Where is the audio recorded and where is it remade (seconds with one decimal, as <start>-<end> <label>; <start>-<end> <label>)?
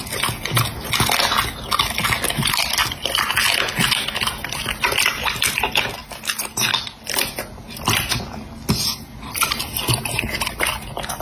0.0-11.2 recorded